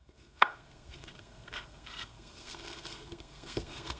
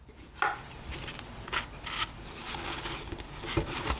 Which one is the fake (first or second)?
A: first